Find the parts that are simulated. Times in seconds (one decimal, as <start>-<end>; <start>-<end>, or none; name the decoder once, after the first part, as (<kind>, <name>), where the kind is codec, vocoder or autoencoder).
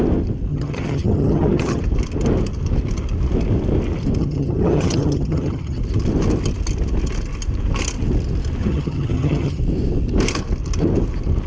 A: 0.5-1.8 (vocoder, HiFi-GAN); 4.2-5.8; 8.6-9.6